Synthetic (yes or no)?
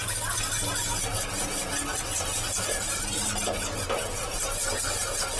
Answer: no